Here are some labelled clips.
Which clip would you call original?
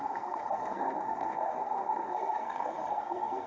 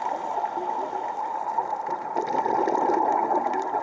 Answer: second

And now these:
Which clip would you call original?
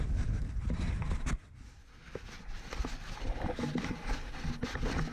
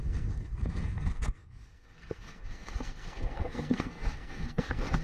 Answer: first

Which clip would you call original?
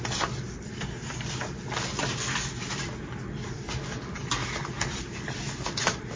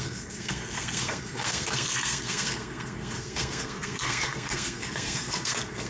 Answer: first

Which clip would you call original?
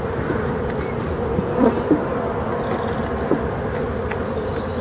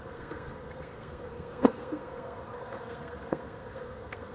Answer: first